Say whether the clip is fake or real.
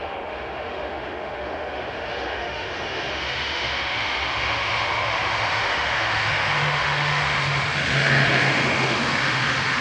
fake